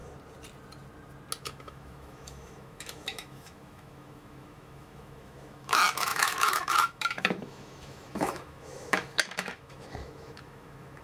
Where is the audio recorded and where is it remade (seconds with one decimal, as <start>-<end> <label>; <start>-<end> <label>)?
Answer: 0.0-1.4 recorded; 1.4-11.0 remade